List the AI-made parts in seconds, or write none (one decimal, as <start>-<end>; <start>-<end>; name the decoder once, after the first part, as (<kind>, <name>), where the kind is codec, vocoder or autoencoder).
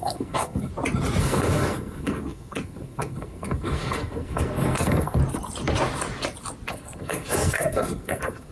0.0-0.7 (codec, SNAC); 1.2-5.2; 6.7-8.5